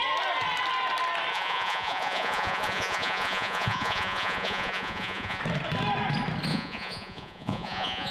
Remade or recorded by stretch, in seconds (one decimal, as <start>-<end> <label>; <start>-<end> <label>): 0.0-1.3 recorded; 1.3-5.4 remade; 5.4-6.5 recorded; 6.5-8.1 remade